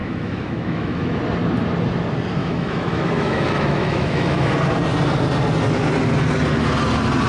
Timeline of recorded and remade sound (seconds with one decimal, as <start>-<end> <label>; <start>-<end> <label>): 0.0-1.2 remade; 1.2-2.4 recorded; 2.4-4.5 remade; 4.5-7.3 recorded